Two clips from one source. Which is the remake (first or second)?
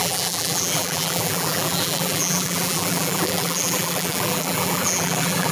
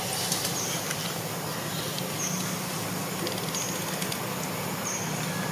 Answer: first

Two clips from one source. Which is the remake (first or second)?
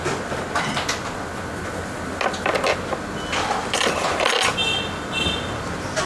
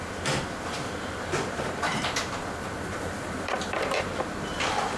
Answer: second